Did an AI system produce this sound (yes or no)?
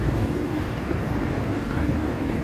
yes